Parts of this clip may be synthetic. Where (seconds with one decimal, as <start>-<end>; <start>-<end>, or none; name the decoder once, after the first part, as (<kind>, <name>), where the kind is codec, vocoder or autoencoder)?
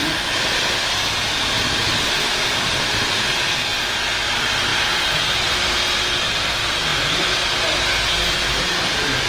none